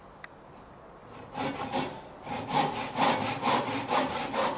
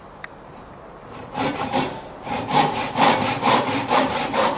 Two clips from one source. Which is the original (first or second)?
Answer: first